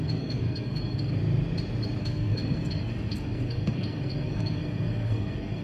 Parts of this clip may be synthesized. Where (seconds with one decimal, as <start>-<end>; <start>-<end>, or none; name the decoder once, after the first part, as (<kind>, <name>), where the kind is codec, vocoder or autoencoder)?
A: 0.0-1.2 (codec, SNAC); 2.0-5.6